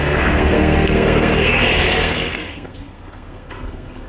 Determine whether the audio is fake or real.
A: fake